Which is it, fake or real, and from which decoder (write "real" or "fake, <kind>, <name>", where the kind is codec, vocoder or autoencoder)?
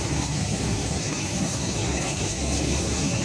fake, codec, SNAC